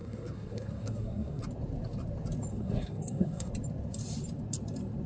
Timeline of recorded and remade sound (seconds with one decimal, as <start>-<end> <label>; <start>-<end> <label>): 0.0-1.4 remade; 1.4-2.5 recorded; 2.5-3.5 remade; 3.5-5.1 recorded